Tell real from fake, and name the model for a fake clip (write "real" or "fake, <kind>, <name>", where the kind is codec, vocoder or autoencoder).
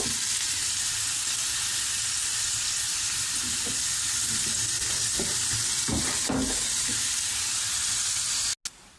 real